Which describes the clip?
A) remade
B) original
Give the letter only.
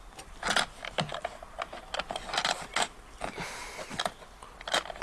B